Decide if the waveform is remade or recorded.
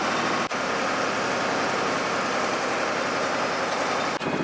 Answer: recorded